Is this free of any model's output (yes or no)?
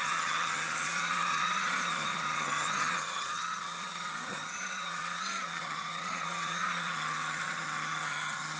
no